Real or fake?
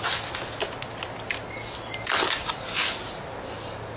real